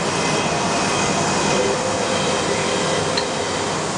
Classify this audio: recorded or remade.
recorded